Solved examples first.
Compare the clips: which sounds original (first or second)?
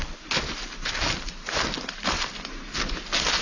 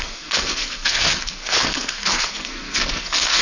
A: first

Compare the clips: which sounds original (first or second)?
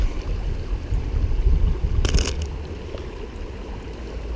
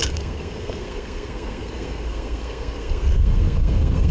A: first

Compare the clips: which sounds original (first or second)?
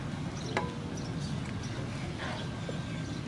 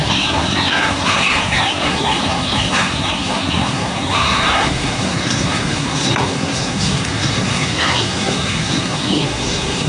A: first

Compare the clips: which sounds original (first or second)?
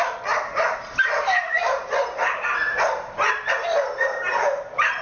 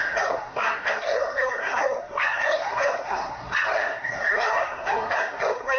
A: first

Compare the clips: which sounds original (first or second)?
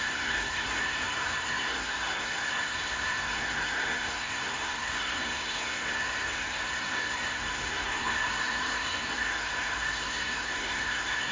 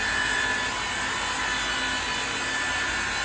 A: second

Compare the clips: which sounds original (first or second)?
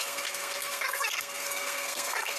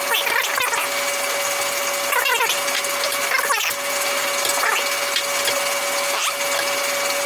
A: second